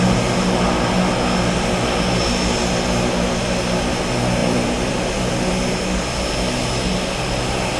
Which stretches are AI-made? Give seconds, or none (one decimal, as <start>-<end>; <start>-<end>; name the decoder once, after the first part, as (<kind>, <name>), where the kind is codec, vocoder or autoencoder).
4.4-5.5 (vocoder, BigVGAN v2)